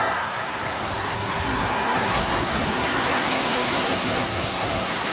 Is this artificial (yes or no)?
yes